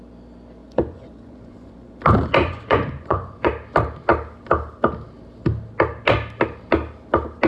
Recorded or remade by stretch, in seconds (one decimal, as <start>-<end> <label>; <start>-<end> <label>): 0.0-0.6 recorded; 0.6-2.0 remade; 2.0-2.4 recorded; 2.4-3.5 remade; 3.5-7.5 recorded